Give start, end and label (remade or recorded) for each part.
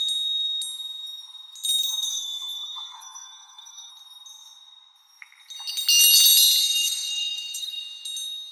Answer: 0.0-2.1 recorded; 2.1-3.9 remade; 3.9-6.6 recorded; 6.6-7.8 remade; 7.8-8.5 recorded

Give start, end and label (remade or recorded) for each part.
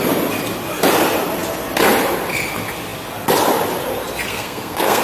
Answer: 0.0-4.3 recorded; 4.3-5.0 remade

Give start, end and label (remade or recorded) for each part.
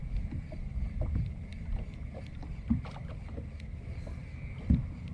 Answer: 0.0-5.1 recorded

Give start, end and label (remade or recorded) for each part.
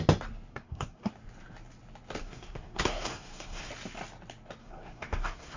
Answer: 0.0-0.5 recorded; 0.5-1.1 remade; 1.1-2.2 recorded; 2.2-3.7 remade; 3.7-4.6 recorded; 4.6-5.6 remade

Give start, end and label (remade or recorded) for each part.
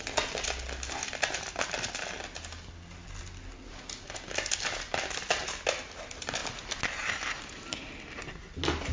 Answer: 0.0-8.9 recorded